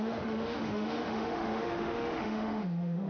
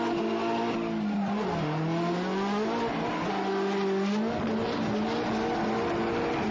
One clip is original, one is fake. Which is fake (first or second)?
first